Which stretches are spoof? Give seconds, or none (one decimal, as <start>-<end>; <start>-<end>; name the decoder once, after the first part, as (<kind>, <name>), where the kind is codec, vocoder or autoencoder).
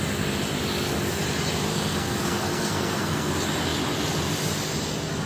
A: 1.7-3.3 (codec, SNAC)